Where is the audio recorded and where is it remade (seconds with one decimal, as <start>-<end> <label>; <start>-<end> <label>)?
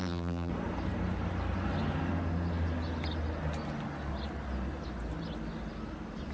0.0-0.5 remade; 0.5-6.3 recorded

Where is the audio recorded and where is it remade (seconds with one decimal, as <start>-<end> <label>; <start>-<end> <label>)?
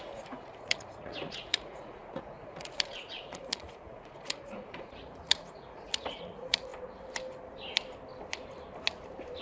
0.0-6.7 remade; 6.7-9.4 recorded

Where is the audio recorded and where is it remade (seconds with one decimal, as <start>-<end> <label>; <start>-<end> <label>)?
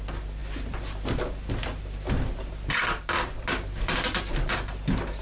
0.0-5.2 recorded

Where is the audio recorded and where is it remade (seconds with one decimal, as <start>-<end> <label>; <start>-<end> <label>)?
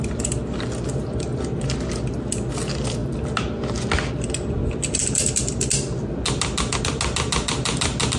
0.0-8.2 recorded